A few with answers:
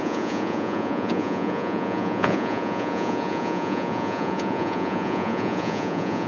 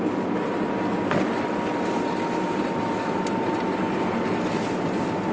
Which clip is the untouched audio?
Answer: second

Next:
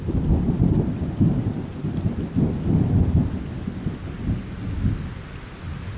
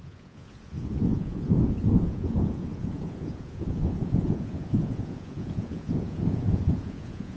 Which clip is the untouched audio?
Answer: first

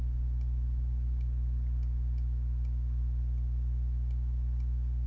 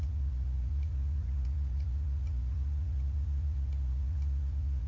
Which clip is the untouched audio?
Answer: first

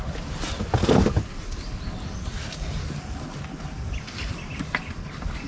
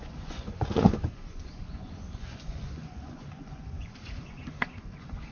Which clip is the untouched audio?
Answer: first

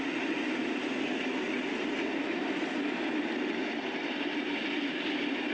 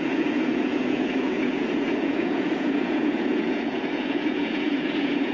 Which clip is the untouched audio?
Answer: first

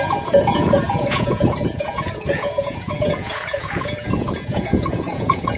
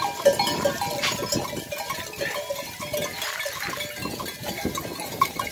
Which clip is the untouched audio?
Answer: second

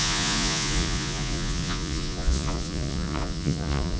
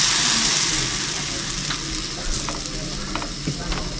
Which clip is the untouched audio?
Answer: second